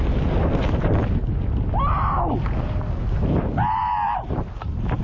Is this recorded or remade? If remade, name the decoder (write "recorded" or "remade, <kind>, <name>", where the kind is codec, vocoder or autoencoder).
recorded